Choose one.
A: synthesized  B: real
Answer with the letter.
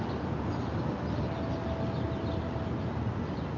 B